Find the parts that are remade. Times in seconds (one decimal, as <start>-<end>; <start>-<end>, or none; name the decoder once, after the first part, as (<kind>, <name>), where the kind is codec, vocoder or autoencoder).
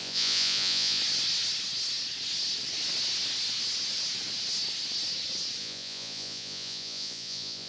0.0-1.0 (vocoder, Vocos); 5.6-7.7